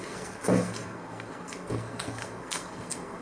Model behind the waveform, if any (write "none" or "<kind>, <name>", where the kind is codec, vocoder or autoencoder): codec, SNAC